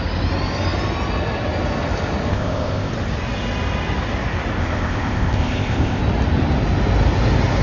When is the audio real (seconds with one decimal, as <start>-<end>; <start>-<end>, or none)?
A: 0.0-2.3; 2.9-4.6; 6.0-7.6